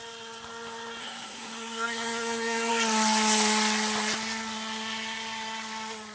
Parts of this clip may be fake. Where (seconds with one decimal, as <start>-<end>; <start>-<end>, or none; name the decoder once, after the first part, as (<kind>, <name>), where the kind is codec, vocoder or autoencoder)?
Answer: 1.0-2.7 (codec, SNAC)